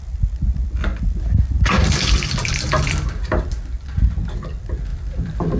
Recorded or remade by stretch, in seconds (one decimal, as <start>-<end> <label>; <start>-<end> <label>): 0.0-0.9 recorded; 0.9-4.1 remade; 4.1-4.9 recorded; 4.9-5.6 remade